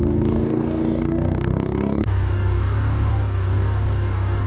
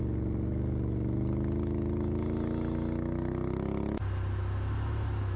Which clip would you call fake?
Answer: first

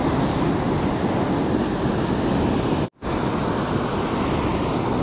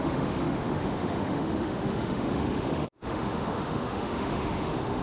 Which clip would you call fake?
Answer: second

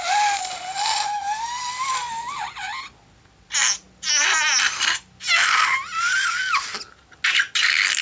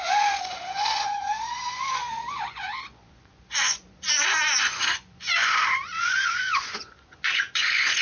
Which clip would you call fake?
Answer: second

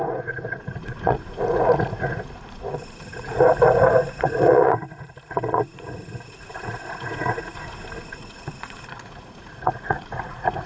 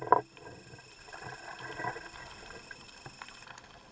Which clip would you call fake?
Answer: first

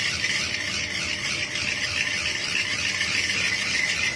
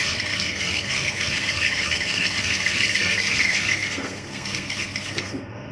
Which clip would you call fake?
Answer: second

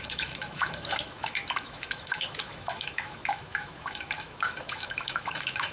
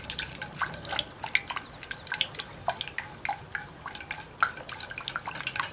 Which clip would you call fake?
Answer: first